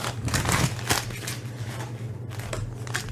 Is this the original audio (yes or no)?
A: yes